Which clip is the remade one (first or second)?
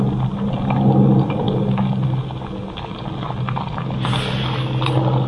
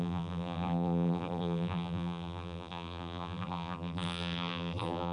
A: second